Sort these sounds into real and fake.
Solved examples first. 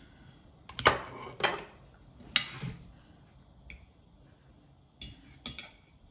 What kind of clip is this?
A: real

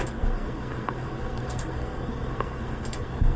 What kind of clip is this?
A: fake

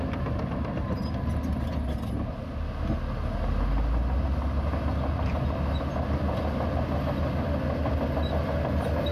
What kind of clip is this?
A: real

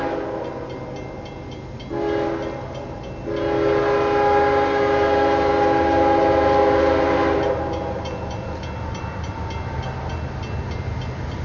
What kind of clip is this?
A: real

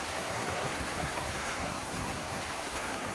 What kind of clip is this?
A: fake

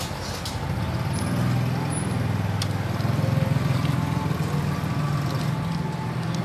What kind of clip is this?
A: real